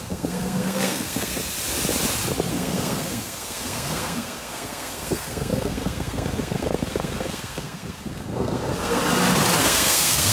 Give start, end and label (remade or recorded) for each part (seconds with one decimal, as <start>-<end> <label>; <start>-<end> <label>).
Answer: 0.0-1.3 remade; 1.3-2.5 recorded; 2.5-9.0 remade; 9.0-9.6 recorded; 9.6-10.3 remade